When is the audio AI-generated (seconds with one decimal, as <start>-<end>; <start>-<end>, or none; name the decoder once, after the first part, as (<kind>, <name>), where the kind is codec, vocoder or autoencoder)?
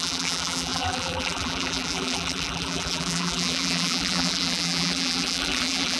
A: 0.0-6.0 (vocoder, BigVGAN v2)